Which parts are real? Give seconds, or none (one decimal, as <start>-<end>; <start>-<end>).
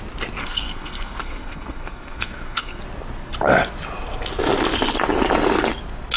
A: 0.0-0.4; 2.8-6.2